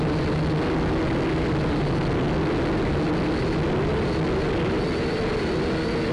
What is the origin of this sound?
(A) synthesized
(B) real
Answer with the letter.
B